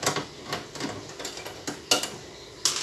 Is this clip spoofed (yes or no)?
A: no